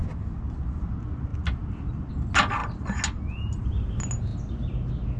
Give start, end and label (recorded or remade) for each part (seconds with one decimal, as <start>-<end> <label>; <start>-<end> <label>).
0.0-5.2 recorded